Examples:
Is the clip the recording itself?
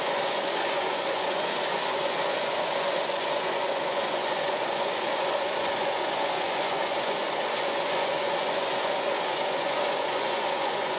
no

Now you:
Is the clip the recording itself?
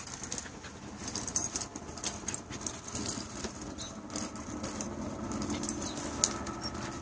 yes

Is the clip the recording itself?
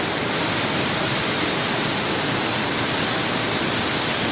yes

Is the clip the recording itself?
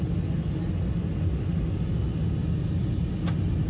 yes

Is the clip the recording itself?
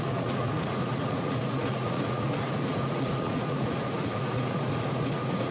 no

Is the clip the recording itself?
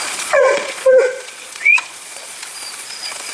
no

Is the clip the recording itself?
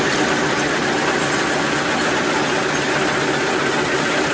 yes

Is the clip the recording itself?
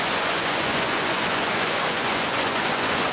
no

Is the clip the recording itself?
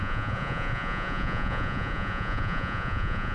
no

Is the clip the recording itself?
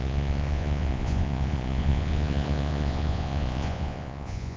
no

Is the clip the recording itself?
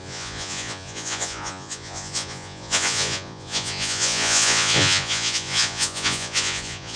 no